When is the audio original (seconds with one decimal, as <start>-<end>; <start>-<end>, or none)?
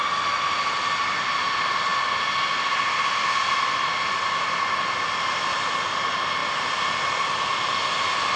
0.0-6.4; 6.9-8.4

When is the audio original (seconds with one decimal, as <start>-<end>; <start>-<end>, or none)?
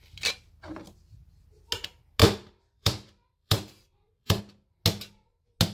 0.0-2.2; 4.4-5.7